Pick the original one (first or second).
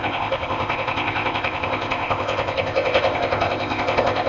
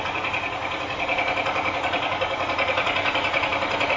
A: second